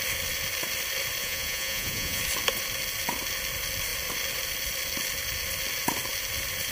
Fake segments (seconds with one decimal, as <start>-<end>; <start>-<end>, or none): 1.2-2.2